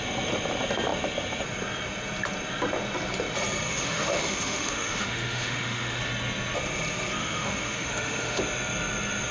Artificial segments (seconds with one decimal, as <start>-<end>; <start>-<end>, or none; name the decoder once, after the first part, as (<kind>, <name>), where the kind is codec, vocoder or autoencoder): 3.7-6.0 (autoencoder, DAC-VAE); 7.2-8.4